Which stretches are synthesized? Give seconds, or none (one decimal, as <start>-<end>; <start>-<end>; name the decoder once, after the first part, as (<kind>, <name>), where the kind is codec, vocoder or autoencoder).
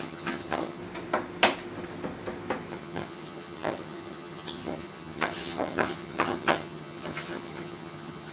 0.0-0.8 (vocoder, HiFi-GAN); 2.7-8.3